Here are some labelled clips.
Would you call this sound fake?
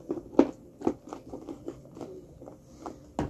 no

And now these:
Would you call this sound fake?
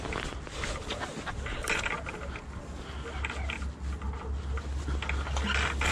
no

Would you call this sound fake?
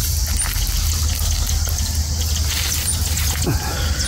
no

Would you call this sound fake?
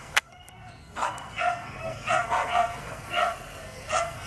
yes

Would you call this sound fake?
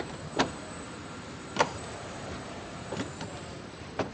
yes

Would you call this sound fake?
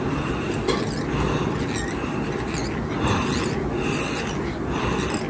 no